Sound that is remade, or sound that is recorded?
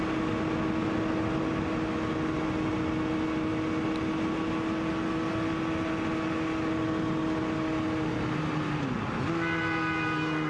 recorded